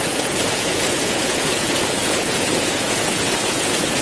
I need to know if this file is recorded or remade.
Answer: remade